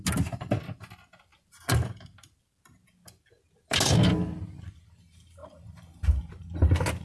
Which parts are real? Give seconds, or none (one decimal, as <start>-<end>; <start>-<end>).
0.0-7.0